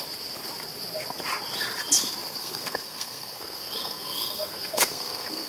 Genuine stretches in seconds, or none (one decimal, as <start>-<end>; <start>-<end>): 0.0-2.4